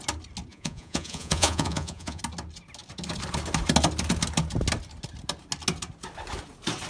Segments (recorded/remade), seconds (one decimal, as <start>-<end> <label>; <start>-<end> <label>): 0.0-0.5 recorded; 0.5-2.2 remade; 2.2-6.9 recorded